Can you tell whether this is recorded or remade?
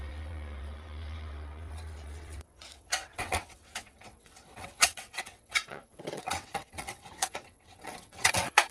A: remade